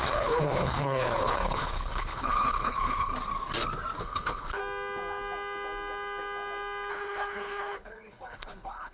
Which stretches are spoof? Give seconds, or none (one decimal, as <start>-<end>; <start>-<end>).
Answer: 0.0-3.1; 4.0-4.6; 6.9-8.9